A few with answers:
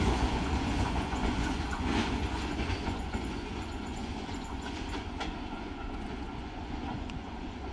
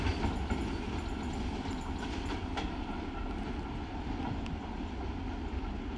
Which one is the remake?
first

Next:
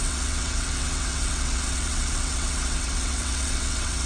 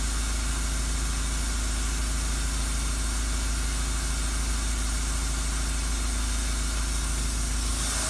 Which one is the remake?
first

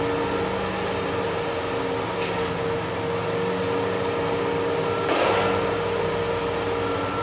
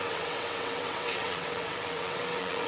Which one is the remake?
second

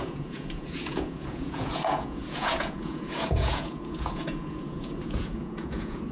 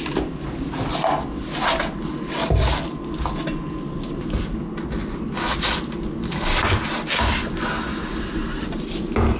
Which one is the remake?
first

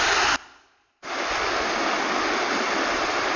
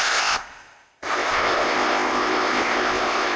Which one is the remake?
second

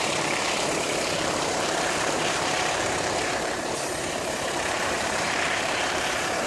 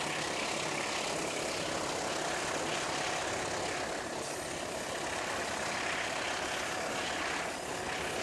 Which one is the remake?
first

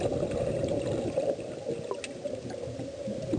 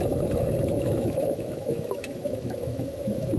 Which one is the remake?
second